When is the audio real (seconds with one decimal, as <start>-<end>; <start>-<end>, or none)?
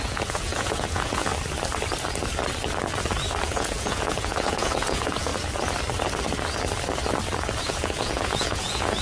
1.3-3.4; 5.3-7.6